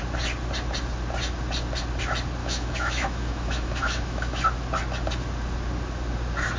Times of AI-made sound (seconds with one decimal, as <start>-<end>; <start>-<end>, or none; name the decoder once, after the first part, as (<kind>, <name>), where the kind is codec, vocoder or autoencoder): 2.4-4.4 (autoencoder, DAC-VAE)